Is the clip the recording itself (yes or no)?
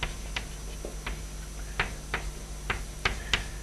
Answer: yes